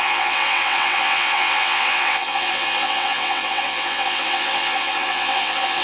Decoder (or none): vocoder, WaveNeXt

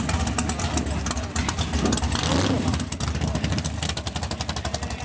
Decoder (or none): none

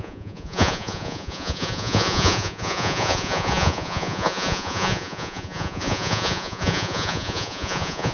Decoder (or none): vocoder, Vocos